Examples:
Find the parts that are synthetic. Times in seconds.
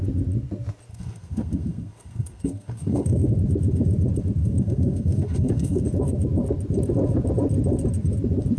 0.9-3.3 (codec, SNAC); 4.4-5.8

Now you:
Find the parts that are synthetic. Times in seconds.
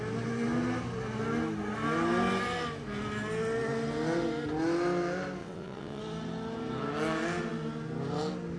5.4-6.0 (vocoder, WaveNeXt)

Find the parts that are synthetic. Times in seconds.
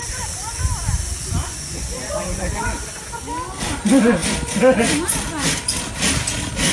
1.4-2.9 (vocoder, Vocos)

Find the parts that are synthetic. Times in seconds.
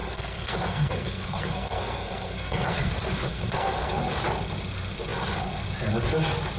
0.0-2.9 (codec, SNAC); 3.3-4.0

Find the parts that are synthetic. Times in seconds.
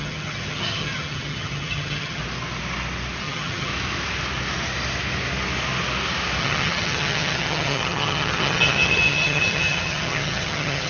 0.0-2.2 (vocoder, HiFi-GAN); 3.2-3.7; 6.4-10.9